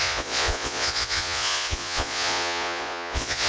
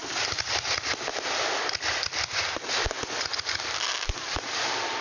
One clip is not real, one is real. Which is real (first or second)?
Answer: second